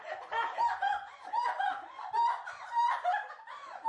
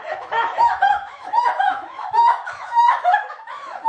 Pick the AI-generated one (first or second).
second